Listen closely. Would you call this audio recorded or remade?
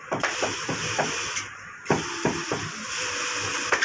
recorded